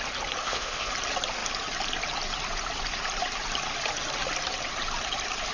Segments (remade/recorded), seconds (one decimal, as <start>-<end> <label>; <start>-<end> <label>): 0.0-0.4 recorded; 0.4-0.9 remade; 0.9-5.5 recorded